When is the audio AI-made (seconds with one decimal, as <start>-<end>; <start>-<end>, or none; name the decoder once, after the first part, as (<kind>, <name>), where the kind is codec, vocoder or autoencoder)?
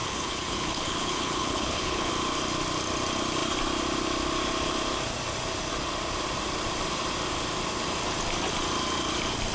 0.0-2.1 (codec, HILCodec)